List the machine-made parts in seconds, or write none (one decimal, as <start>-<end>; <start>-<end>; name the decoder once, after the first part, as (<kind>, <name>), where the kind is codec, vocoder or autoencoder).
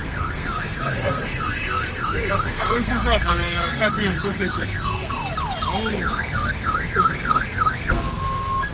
0.0-5.2 (codec, SNAC); 5.9-8.7